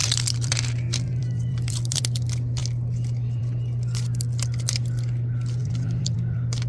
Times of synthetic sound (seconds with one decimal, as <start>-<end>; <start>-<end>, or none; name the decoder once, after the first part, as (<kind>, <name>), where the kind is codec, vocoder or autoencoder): 0.0-2.0 (vocoder, BigVGAN v2); 5.6-6.7